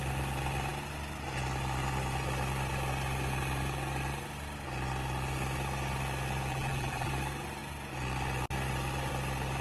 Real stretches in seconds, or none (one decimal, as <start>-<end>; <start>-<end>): 0.0-6.5; 7.1-9.6